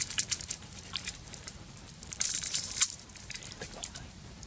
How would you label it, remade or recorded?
remade